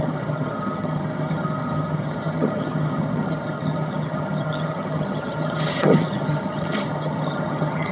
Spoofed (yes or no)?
yes